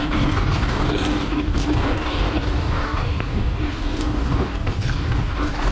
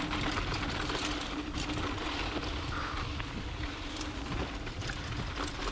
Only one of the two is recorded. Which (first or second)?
second